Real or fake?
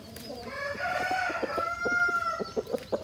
fake